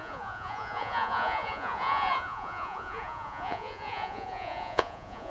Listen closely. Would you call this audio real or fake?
fake